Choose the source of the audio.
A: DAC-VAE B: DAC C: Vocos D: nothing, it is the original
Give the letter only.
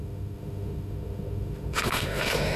A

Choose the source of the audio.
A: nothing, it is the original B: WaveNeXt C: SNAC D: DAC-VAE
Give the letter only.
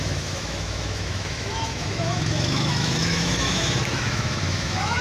D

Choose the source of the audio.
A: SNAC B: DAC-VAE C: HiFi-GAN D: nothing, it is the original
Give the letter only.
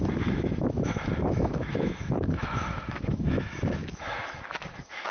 B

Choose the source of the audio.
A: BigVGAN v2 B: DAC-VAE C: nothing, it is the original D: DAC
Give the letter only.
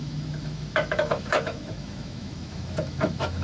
B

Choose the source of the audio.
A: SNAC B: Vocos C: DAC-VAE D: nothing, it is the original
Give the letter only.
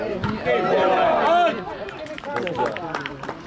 D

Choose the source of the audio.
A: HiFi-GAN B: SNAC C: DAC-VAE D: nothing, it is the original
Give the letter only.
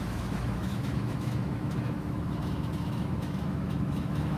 C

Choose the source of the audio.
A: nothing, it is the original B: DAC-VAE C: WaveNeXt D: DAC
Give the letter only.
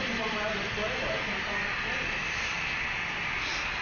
A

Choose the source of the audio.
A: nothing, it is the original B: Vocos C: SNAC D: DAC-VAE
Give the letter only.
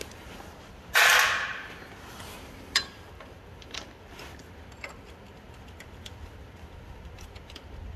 A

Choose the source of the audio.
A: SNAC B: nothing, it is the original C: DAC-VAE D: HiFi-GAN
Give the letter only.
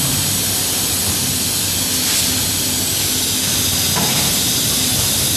B